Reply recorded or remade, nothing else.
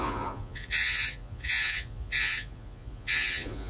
remade